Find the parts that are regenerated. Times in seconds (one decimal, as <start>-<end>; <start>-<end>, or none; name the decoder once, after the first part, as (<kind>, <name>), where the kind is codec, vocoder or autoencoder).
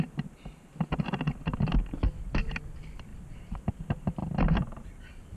none